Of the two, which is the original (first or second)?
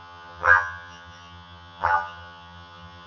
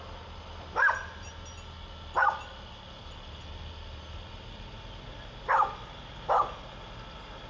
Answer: second